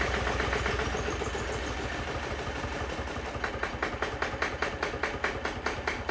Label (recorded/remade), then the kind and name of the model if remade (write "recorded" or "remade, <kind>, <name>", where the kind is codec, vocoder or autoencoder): recorded